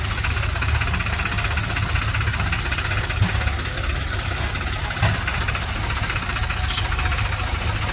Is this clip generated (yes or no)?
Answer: no